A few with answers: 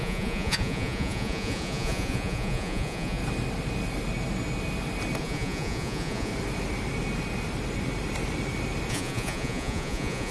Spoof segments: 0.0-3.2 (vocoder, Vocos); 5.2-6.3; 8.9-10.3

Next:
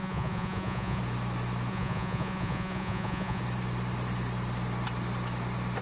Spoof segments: 0.0-1.0 (vocoder, Vocos); 1.7-3.4